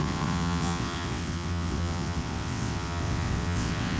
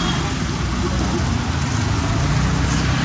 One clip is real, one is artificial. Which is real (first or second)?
second